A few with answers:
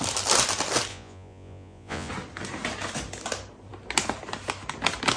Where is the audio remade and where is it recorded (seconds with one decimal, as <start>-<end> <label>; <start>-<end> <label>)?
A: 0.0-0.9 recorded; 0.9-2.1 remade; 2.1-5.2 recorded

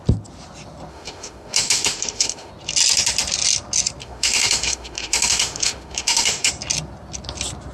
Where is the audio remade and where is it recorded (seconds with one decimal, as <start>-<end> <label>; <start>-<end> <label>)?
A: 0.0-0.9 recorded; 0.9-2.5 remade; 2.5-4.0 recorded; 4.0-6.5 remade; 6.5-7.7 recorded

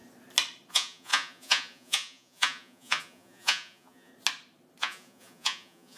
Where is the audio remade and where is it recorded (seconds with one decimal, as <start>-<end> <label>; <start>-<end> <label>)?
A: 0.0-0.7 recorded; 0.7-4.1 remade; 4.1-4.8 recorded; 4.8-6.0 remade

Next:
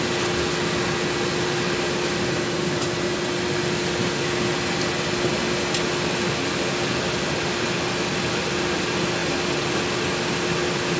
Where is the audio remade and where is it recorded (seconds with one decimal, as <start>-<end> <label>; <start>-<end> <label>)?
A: 0.0-11.0 recorded

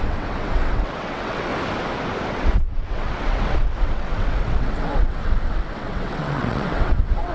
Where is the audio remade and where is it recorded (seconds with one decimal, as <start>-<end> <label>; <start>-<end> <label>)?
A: 0.0-1.5 remade; 1.5-2.3 recorded; 2.3-7.3 remade